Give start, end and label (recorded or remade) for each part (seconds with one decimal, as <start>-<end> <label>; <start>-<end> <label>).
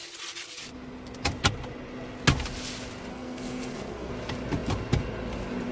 0.0-3.1 recorded; 3.1-4.1 remade; 4.1-5.7 recorded